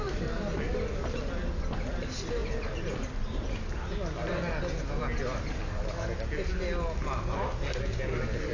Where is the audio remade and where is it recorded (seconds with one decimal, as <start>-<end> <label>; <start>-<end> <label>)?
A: 0.0-8.5 recorded